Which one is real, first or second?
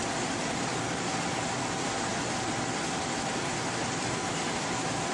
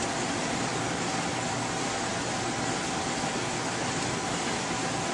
second